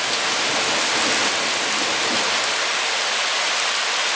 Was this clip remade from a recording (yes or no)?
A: no